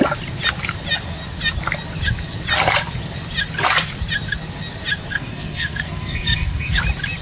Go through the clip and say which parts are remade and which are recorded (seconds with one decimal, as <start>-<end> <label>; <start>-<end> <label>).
0.0-5.1 recorded; 5.1-6.8 remade; 6.8-7.2 recorded